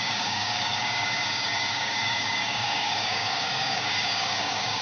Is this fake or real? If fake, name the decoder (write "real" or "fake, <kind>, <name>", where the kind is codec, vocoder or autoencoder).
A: fake, codec, DAC